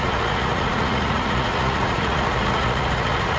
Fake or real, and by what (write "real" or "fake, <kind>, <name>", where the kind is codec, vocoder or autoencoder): fake, vocoder, Vocos